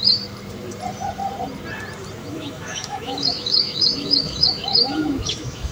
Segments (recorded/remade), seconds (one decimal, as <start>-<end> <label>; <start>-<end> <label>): 0.0-2.2 recorded; 2.2-5.7 remade